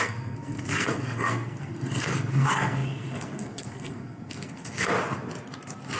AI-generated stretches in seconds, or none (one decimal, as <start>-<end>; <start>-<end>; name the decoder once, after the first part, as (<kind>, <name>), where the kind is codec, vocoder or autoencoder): 0.0-4.9 (codec, SNAC)